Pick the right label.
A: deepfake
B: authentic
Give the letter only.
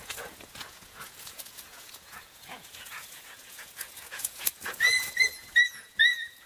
A